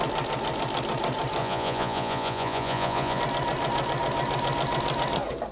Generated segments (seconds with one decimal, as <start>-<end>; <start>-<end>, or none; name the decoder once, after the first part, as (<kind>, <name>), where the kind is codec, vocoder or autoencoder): 1.4-3.2 (vocoder, Vocos)